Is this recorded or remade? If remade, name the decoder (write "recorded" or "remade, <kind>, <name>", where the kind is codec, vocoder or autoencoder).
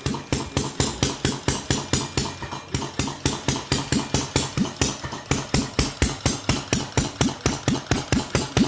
recorded